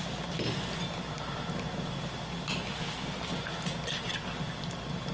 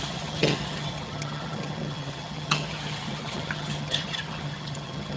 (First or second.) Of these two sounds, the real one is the first